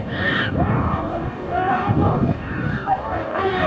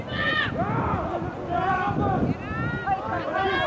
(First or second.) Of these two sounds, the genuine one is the second